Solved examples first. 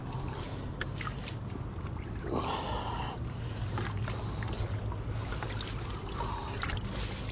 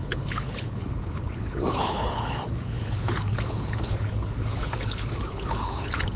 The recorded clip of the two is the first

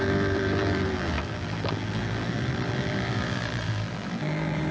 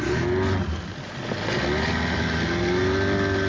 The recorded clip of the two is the second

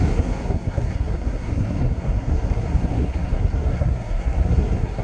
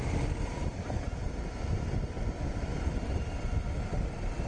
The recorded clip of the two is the second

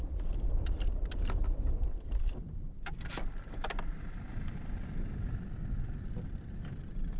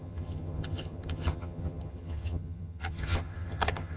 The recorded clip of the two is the first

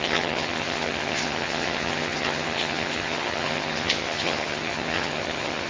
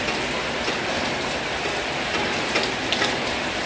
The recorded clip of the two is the second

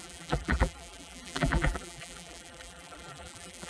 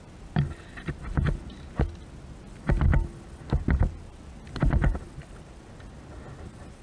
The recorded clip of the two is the second